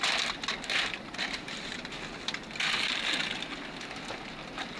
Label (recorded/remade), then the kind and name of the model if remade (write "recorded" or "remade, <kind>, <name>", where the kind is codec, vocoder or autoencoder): recorded